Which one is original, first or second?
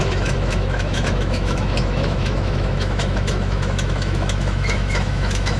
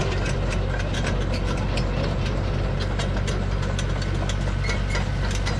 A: second